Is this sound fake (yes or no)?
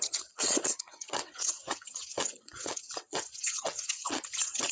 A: yes